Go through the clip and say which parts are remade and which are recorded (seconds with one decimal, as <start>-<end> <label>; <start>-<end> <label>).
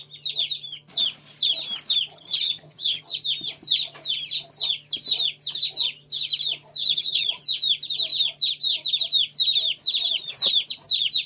0.0-2.1 recorded; 2.1-3.2 remade; 3.2-6.8 recorded; 6.8-7.4 remade; 7.4-11.3 recorded